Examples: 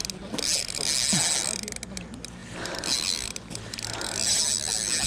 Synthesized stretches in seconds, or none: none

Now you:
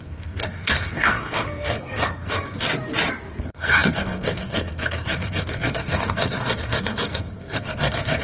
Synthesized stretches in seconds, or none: 0.0-2.7 (codec, SNAC); 3.4-8.2

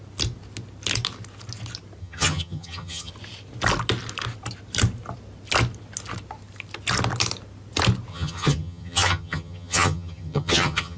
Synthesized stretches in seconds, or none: 2.0-3.1 (vocoder, HiFi-GAN); 8.1-11.0

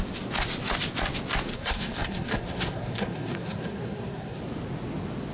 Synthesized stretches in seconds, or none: 1.5-4.4 (codec, SNAC)

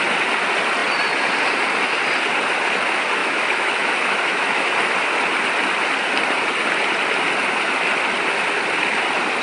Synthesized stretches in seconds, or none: 3.2-4.7 (autoencoder, DAC-VAE)

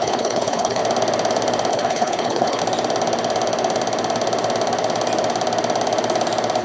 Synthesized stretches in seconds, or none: 0.0-0.8 (codec, HILCodec); 1.7-2.6